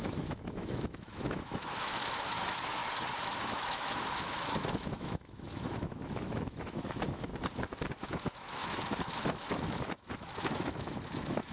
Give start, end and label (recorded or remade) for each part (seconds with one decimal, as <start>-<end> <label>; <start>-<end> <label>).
0.0-2.8 remade; 2.8-3.4 recorded; 3.4-7.3 remade; 7.3-8.0 recorded; 8.0-11.5 remade